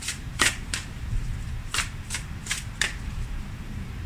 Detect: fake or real fake